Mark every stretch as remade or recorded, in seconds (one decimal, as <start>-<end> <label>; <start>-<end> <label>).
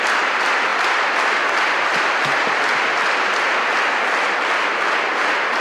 0.0-5.6 recorded